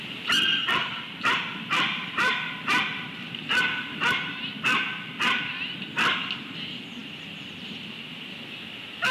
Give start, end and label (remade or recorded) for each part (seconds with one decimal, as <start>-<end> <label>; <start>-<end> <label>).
0.0-0.9 recorded; 0.9-5.4 remade; 5.4-7.0 recorded; 7.0-7.6 remade; 7.6-9.1 recorded